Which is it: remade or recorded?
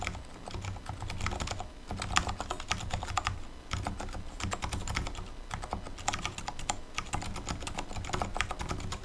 recorded